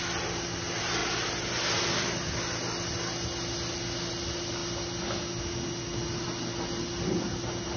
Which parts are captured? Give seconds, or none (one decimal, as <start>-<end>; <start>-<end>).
0.0-7.8